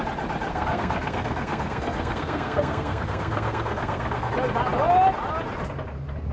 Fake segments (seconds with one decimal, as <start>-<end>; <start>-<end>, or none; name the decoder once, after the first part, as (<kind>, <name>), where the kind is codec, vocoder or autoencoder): 0.5-4.3 (codec, SNAC)